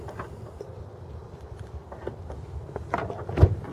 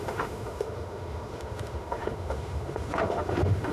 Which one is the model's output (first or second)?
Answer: second